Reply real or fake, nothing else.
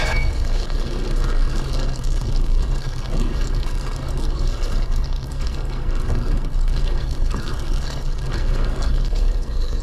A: fake